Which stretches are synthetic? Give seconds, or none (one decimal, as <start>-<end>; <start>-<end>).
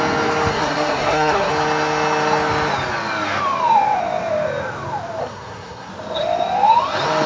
0.5-1.5; 5.2-5.9